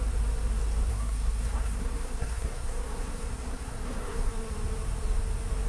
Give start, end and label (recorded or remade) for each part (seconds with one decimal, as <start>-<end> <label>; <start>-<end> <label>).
0.0-0.9 recorded; 0.9-4.3 remade; 4.3-5.7 recorded